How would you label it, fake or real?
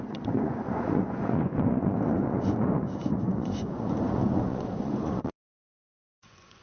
fake